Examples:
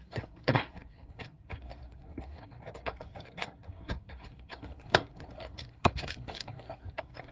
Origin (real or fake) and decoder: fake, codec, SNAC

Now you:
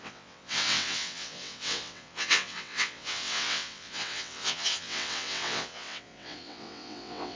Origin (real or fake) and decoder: fake, vocoder, WaveNeXt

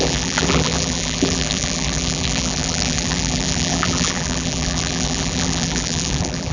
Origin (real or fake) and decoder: fake, vocoder, BigVGAN v2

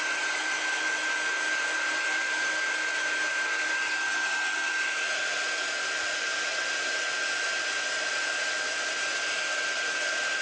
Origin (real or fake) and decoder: real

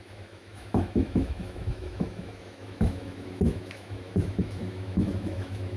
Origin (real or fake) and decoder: fake, autoencoder, DAC-VAE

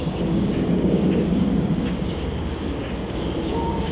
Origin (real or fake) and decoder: fake, codec, DAC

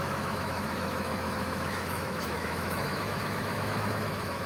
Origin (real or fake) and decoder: fake, autoencoder, DAC-VAE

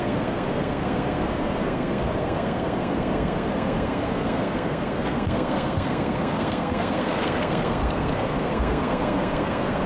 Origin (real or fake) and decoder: fake, codec, SNAC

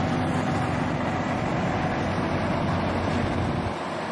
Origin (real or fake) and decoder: real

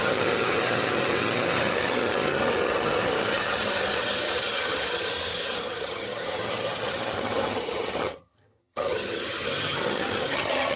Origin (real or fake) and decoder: fake, vocoder, HiFi-GAN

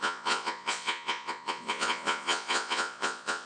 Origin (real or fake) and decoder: fake, vocoder, Vocos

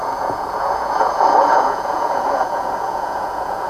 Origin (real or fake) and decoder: fake, vocoder, Vocos